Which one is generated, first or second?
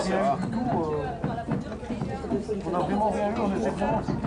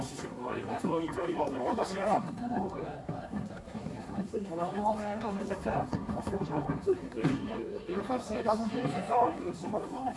second